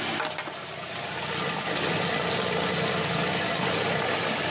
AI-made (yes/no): no